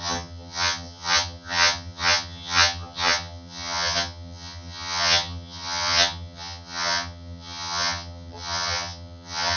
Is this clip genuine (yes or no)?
no